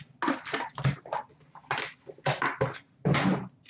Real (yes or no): yes